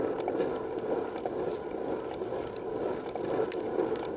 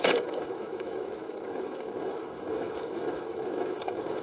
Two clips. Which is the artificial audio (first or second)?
second